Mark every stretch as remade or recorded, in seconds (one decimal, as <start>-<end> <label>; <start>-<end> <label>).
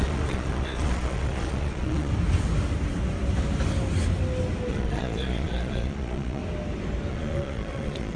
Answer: 0.0-2.1 remade; 2.1-4.7 recorded; 4.7-6.4 remade; 6.4-7.1 recorded; 7.1-8.2 remade